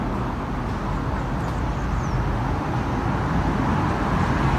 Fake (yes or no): no